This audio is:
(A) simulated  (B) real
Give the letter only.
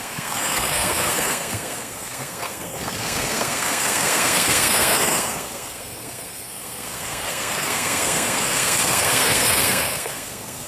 A